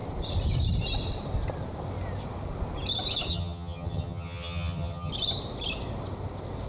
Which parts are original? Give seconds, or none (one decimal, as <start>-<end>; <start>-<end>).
0.0-3.3; 5.1-6.7